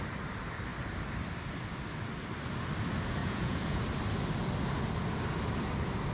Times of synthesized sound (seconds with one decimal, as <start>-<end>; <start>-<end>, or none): 3.2-3.8